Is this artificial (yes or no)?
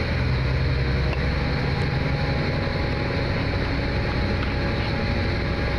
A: no